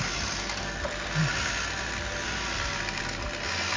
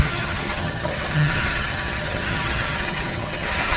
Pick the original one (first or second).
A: first